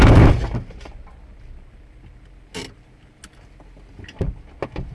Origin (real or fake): real